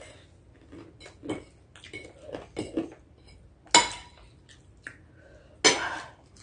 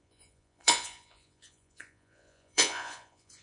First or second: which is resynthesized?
second